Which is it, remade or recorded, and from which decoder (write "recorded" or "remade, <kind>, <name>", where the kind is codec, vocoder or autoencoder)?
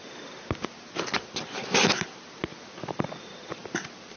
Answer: recorded